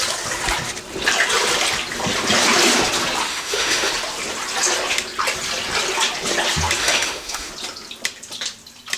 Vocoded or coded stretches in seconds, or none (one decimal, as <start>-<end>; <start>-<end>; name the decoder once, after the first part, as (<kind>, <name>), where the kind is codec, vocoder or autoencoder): 3.3-3.9 (autoencoder, DAC-VAE); 6.8-7.5